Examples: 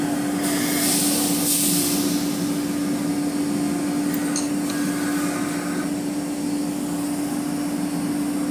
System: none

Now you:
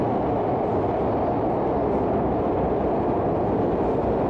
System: none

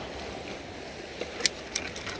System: none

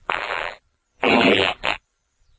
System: vocoder, BigVGAN v2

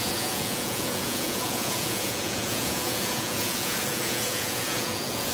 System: vocoder, Vocos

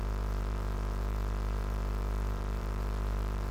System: vocoder, BigVGAN v2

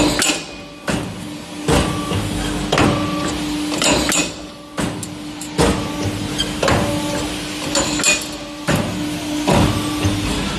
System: none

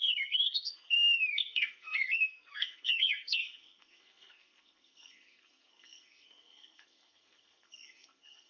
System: codec, SNAC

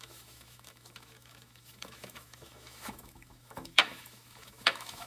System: autoencoder, DAC-VAE